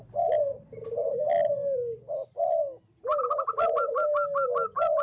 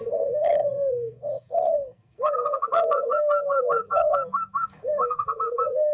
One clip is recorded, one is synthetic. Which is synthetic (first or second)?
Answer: second